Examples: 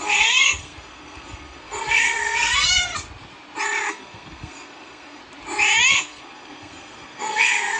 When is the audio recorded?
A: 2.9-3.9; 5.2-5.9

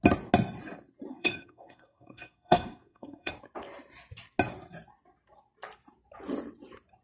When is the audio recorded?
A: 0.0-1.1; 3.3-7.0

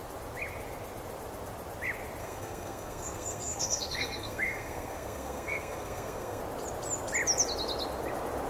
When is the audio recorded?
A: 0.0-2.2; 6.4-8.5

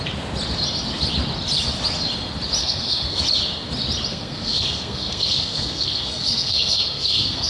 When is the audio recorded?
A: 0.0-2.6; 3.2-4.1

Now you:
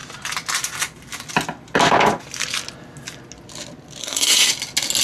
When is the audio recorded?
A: 0.0-4.0; 4.5-5.0

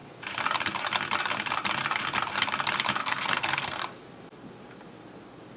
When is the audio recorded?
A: 0.0-3.0; 3.8-5.6

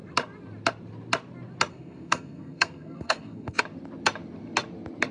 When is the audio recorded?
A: 0.0-1.7; 3.6-5.1